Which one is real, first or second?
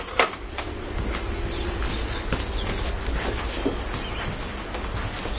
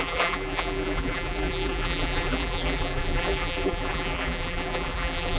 first